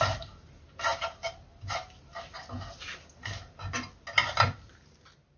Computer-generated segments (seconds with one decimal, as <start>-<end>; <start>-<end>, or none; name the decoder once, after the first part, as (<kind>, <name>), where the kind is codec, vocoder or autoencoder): none